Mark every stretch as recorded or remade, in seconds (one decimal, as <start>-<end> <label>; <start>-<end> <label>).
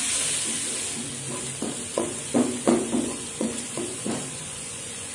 0.0-1.9 recorded; 1.9-5.1 remade